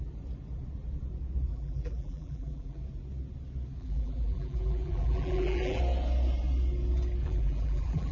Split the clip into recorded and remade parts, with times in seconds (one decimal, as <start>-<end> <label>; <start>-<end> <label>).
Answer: 0.0-1.5 recorded; 1.5-2.8 remade; 2.8-3.8 recorded; 3.8-5.8 remade; 5.8-7.2 recorded; 7.2-8.1 remade